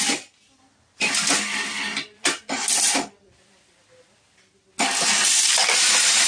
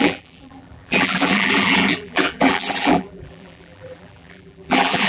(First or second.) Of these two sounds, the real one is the first